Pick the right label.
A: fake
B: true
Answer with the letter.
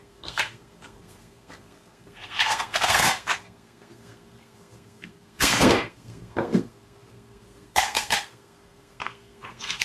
A